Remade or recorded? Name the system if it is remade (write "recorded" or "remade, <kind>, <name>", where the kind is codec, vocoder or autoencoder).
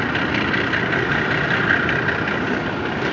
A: recorded